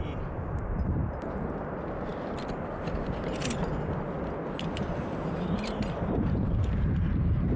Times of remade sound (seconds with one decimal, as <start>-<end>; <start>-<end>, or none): 0.0-2.1; 5.0-7.6